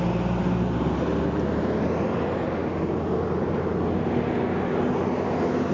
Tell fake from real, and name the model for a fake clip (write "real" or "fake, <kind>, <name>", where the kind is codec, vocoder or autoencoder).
real